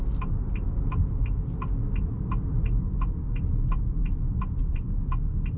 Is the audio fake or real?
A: real